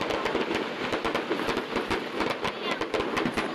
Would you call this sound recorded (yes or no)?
yes